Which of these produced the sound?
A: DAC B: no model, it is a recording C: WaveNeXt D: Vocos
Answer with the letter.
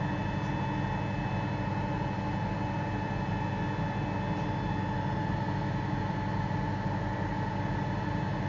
B